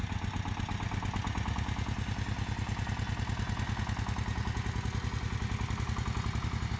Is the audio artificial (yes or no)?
no